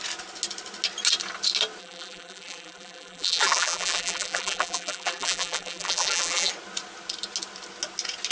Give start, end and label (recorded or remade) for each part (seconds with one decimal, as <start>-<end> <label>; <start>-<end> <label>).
0.0-1.8 recorded; 1.8-6.5 remade; 6.5-8.3 recorded